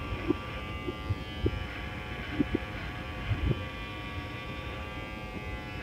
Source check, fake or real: real